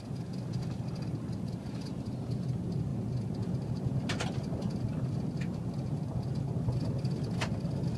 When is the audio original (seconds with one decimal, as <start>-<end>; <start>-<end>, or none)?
0.0-8.0